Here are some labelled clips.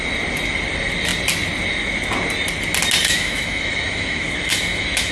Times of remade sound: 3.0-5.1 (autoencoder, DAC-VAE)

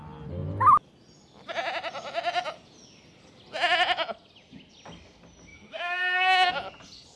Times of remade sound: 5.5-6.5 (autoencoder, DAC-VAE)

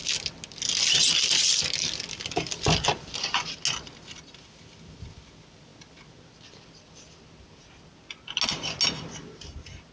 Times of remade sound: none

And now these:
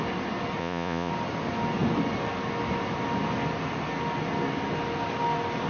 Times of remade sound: 0.6-1.1 (vocoder, Vocos)